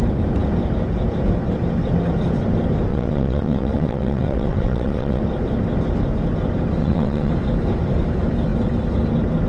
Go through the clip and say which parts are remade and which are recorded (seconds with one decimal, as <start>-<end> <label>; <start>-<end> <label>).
0.0-2.9 recorded; 2.9-5.2 remade; 5.2-6.8 recorded; 6.8-7.3 remade; 7.3-9.5 recorded